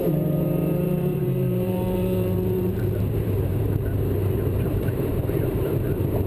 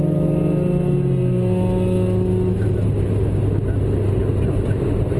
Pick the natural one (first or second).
second